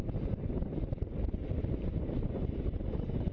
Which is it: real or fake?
fake